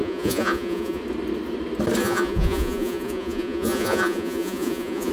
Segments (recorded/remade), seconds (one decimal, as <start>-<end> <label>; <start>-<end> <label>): 0.0-1.0 remade; 1.0-2.0 recorded; 2.0-5.1 remade

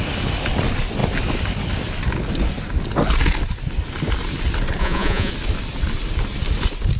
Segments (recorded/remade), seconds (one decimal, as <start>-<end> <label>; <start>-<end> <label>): 0.0-4.8 recorded; 4.8-5.3 remade; 5.3-7.0 recorded

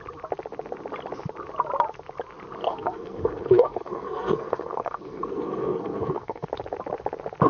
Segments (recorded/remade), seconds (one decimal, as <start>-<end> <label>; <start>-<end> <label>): 0.0-2.6 recorded; 2.6-6.5 remade; 6.5-7.5 recorded

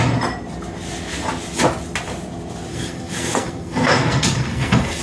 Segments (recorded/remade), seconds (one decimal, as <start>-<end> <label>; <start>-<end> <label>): 0.0-2.7 recorded; 2.7-5.0 remade

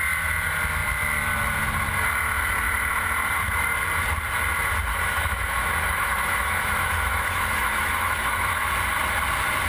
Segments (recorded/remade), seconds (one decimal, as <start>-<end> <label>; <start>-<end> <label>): 0.0-4.9 recorded; 4.9-8.7 remade; 8.7-9.7 recorded

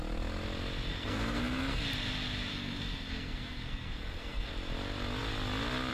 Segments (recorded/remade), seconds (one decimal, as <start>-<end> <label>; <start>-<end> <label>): 0.0-0.9 recorded; 0.9-1.8 remade; 1.8-2.5 recorded; 2.5-4.5 remade; 4.5-5.9 recorded

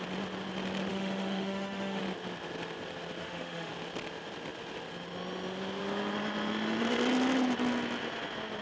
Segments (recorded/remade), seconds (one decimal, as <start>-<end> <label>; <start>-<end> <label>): 0.0-0.9 recorded; 0.9-2.0 remade; 2.0-3.2 recorded; 3.2-3.7 remade; 3.7-8.6 recorded